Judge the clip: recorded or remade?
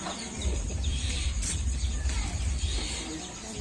remade